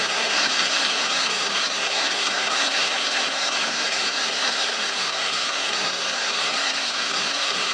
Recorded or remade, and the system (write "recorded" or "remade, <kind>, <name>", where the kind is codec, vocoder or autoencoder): remade, codec, SNAC